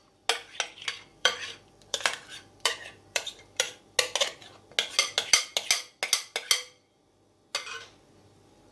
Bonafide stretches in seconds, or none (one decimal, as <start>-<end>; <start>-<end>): 0.0-1.1; 3.8-8.7